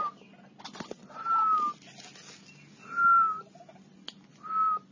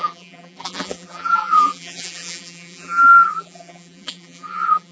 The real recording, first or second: first